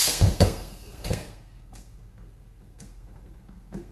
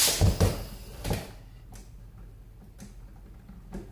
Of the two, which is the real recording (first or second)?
second